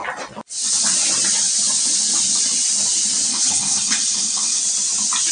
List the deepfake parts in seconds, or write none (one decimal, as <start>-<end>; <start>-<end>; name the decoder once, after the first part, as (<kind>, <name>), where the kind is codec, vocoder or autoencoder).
3.3-4.6 (codec, HILCodec)